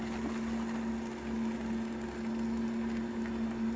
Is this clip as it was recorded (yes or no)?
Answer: yes